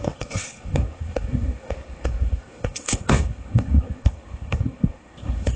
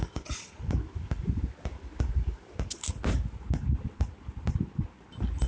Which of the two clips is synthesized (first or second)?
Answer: first